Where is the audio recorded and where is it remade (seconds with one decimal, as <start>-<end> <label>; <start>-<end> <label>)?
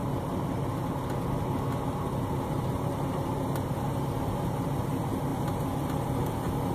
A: 0.0-6.7 recorded